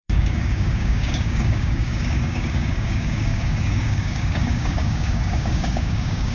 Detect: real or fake fake